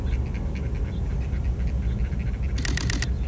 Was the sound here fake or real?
real